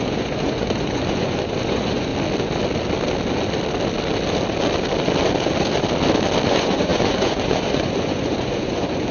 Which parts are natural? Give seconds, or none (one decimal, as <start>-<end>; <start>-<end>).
2.1-6.5